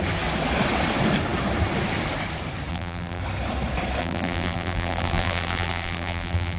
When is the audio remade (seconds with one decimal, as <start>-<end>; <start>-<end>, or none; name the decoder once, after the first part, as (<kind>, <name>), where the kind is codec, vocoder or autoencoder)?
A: 2.7-3.2 (vocoder, BigVGAN v2); 4.0-6.6